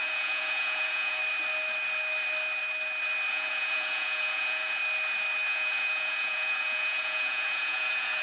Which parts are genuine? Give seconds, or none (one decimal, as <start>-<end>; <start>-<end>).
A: 1.2-3.3; 4.8-5.5